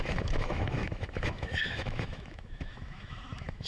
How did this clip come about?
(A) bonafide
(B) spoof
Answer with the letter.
B